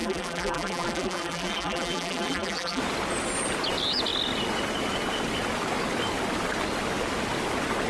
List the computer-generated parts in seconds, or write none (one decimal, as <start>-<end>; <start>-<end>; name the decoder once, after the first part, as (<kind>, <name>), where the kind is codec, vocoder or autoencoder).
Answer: 0.0-2.8 (vocoder, BigVGAN v2)